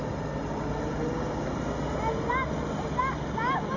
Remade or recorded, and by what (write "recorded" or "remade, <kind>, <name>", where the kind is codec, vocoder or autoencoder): recorded